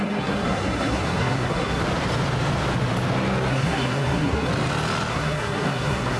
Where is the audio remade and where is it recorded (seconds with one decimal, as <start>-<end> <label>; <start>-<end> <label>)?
0.0-1.8 remade; 1.8-3.5 recorded; 3.5-4.5 remade; 4.5-5.1 recorded; 5.1-6.2 remade